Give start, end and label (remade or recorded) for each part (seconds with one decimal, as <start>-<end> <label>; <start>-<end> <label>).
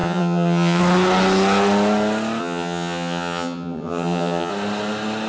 0.0-0.8 remade; 0.8-2.4 recorded; 2.4-4.5 remade; 4.5-5.3 recorded